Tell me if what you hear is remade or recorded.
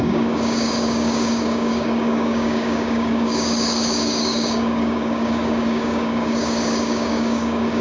remade